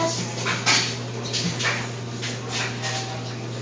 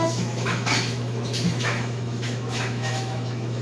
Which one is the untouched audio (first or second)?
first